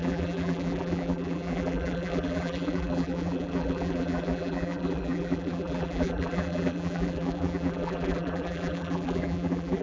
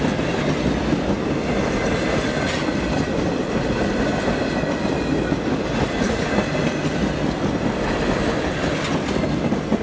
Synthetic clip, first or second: first